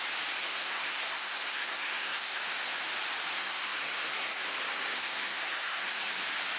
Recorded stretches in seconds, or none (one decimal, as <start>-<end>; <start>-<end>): 0.0-0.4; 2.4-3.3; 4.4-4.9; 6.1-6.6

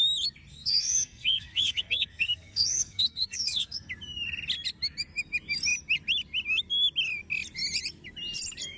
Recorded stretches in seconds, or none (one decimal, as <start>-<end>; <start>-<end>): 0.0-0.5; 3.9-8.8

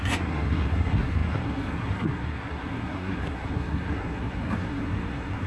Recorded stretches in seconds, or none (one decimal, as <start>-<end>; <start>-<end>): none

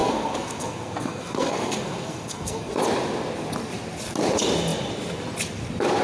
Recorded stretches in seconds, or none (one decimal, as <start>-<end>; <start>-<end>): 2.7-6.0

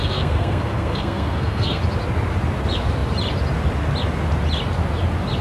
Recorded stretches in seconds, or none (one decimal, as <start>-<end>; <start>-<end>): 1.8-5.4

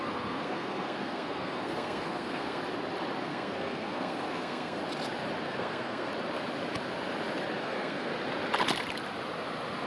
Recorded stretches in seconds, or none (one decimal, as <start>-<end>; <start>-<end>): 2.6-3.2; 4.8-5.4; 6.1-7.6; 8.1-9.9